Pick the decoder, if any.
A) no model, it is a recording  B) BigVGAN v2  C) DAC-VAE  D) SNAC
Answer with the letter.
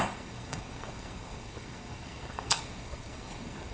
D